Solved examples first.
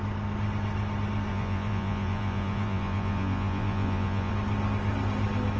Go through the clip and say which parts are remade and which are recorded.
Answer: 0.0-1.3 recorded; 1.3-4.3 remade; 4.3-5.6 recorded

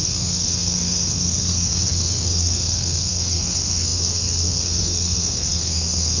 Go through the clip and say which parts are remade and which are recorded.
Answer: 0.0-6.2 remade

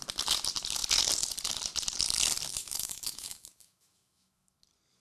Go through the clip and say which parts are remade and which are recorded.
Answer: 0.0-2.5 recorded; 2.5-4.6 remade; 4.6-5.0 recorded